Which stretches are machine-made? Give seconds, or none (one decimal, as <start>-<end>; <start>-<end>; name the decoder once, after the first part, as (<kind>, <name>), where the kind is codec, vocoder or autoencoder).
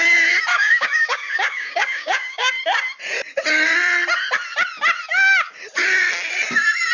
0.5-2.5 (codec, DAC)